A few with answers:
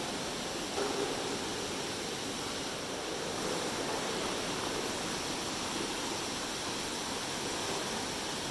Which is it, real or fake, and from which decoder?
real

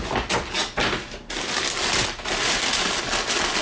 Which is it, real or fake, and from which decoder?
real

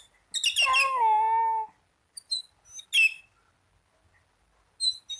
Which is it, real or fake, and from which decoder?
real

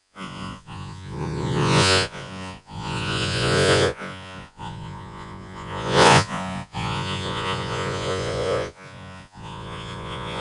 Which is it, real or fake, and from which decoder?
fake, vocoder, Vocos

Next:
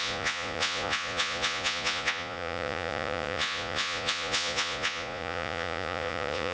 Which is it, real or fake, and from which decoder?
fake, vocoder, Vocos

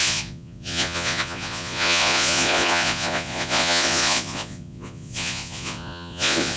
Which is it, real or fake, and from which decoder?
fake, vocoder, Vocos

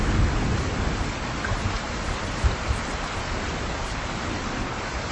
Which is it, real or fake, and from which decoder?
real